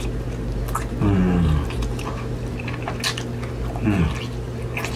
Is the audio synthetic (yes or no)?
no